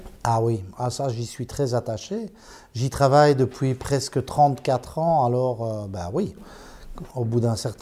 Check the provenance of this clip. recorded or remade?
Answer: recorded